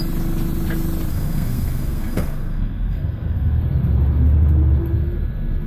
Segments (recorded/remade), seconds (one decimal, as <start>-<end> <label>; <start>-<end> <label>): 0.0-1.1 recorded; 1.1-3.6 remade; 3.6-5.7 recorded